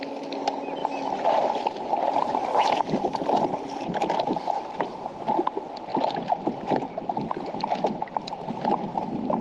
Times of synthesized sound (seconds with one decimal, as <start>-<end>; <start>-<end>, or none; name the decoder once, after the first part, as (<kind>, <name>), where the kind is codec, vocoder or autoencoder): 0.8-4.4 (vocoder, BigVGAN v2); 5.9-6.8